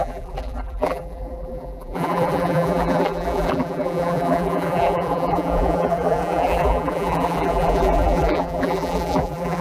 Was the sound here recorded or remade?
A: remade